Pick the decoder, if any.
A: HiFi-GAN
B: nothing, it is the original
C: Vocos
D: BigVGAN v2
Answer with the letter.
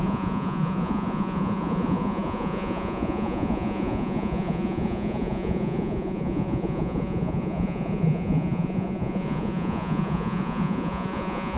C